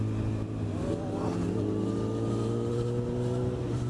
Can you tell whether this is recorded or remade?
recorded